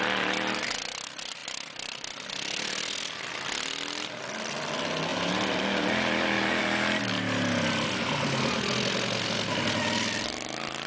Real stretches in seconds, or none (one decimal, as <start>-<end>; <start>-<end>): 0.0-10.9